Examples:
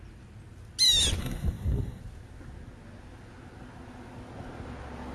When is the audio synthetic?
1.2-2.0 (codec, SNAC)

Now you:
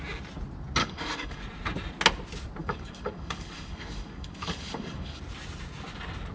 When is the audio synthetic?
0.8-1.4 (codec, DAC); 2.6-5.2

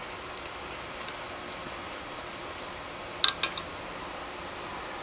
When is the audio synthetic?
none

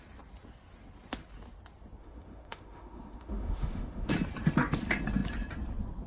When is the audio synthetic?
2.0-4.1 (autoencoder, DAC-VAE)

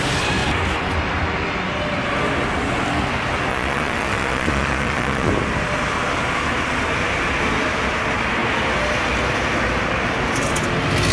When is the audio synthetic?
3.5-5.3 (vocoder, Vocos)

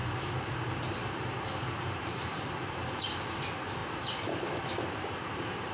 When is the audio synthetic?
0.0-3.4 (vocoder, BigVGAN v2); 3.8-5.7

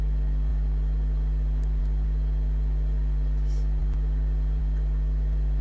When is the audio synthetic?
none

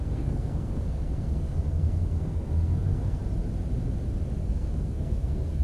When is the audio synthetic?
0.0-3.2 (codec, SNAC); 4.4-5.6